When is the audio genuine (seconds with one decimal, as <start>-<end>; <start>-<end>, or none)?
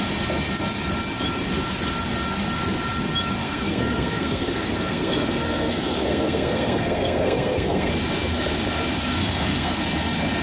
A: 0.0-3.4; 7.9-9.2; 9.8-10.4